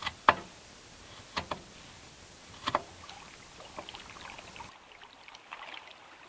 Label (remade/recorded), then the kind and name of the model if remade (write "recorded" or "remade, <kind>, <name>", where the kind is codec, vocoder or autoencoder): remade, vocoder, BigVGAN v2